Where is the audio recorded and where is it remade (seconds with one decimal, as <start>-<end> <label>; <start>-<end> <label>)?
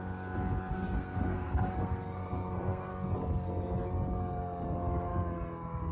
0.0-0.7 recorded; 0.7-2.9 remade; 2.9-5.9 recorded